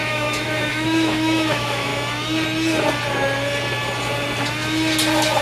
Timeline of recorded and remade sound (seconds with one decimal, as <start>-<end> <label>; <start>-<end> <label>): 0.0-1.9 remade; 1.9-5.4 recorded